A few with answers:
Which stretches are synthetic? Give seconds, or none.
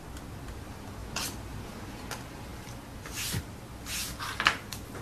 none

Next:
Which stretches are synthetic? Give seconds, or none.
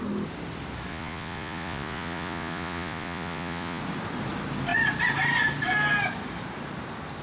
0.9-3.8 (vocoder, Vocos)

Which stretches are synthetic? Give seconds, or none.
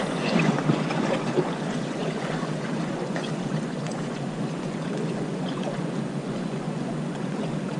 0.0-7.8 (vocoder, Vocos)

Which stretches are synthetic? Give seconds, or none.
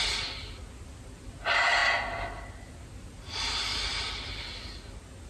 none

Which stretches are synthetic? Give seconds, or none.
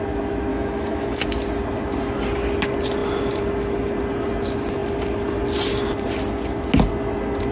0.5-1.2 (autoencoder, DAC-VAE)